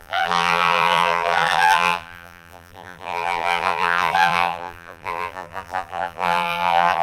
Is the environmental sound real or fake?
fake